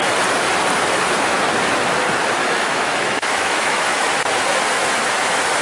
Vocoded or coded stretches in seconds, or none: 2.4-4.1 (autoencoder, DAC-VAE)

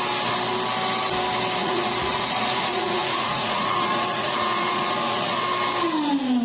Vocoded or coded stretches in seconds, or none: 1.6-5.4 (vocoder, Vocos)

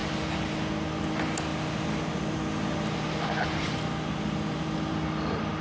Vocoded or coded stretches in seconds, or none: none

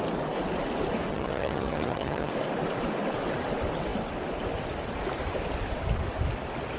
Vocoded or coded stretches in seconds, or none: 1.1-2.3 (vocoder, HiFi-GAN)

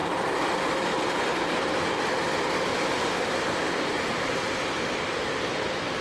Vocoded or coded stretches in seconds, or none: 0.0-6.0 (vocoder, BigVGAN v2)

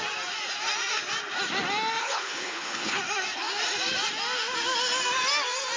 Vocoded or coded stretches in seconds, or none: 2.0-3.0 (codec, HILCodec)

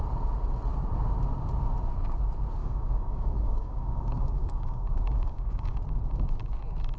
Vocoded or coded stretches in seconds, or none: 2.6-5.8 (codec, DAC)